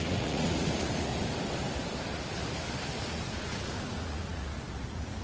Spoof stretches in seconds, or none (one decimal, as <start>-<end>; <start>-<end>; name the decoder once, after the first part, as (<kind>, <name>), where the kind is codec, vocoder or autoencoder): 0.0-1.1 (vocoder, Vocos); 3.0-5.2